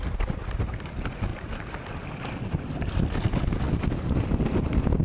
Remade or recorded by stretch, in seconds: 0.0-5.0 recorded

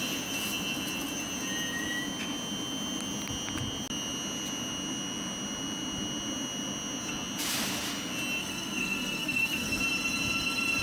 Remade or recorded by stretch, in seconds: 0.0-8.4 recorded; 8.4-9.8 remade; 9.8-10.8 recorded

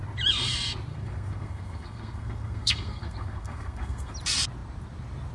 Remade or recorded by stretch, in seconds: 0.0-0.9 recorded; 0.9-4.1 remade; 4.1-5.3 recorded

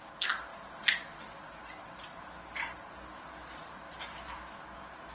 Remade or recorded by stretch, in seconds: 0.0-5.1 recorded